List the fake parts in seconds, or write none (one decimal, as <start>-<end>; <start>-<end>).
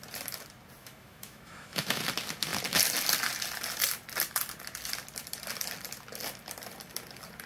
0.8-2.0